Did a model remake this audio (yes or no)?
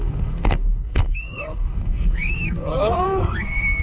yes